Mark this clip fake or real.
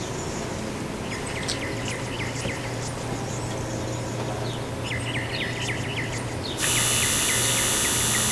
real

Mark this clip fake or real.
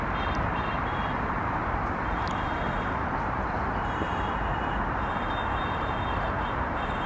fake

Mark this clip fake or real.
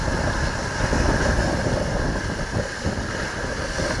real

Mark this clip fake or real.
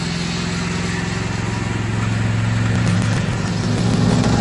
real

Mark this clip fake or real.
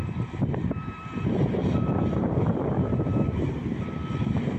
fake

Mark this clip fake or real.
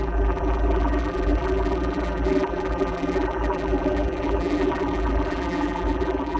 fake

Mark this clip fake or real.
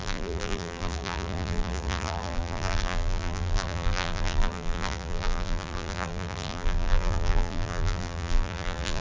fake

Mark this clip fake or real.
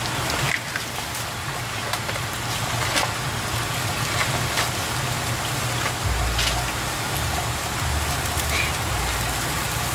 real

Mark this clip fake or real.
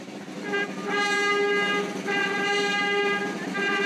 real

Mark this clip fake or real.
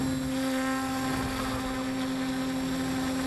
real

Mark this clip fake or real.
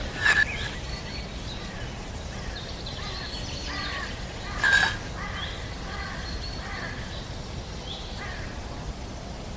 real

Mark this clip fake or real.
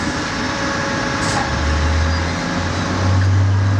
real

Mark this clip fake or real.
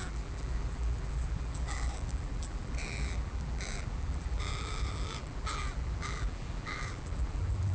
fake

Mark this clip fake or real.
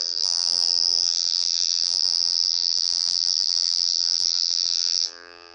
fake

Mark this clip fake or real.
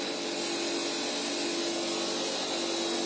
real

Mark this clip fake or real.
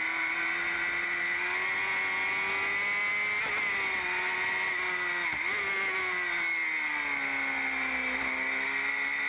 real